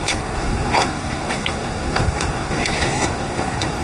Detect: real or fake fake